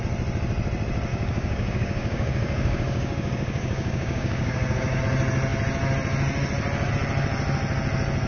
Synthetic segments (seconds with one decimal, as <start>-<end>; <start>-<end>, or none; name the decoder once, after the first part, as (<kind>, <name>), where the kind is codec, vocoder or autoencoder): 1.1-5.0 (codec, DAC)